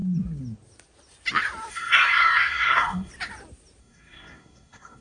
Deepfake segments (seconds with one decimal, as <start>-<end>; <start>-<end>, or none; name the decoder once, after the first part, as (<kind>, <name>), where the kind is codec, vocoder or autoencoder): 1.7-3.1 (codec, SNAC); 3.8-5.0